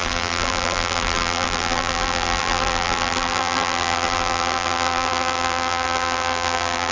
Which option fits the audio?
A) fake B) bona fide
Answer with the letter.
A